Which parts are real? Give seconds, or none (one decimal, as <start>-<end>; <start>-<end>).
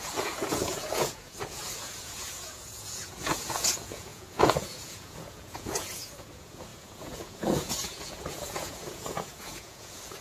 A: none